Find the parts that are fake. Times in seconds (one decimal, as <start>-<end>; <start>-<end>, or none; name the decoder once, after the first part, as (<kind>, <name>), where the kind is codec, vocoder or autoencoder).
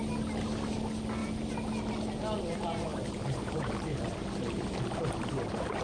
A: none